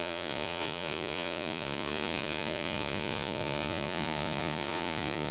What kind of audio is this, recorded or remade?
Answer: remade